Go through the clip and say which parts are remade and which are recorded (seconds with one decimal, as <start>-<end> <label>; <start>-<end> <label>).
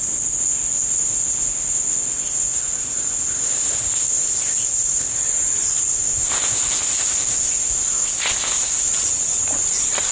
0.0-5.2 remade; 5.2-5.9 recorded; 5.9-8.9 remade; 8.9-10.1 recorded